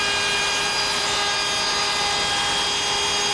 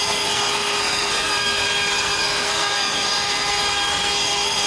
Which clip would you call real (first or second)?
first